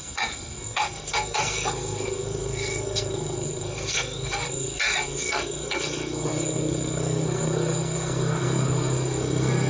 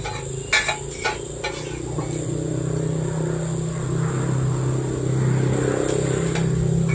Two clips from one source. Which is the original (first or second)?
second